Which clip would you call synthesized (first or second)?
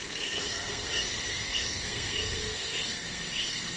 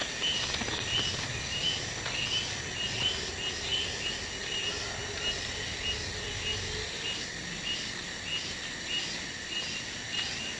first